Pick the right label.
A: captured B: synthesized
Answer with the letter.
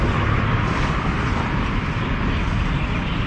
A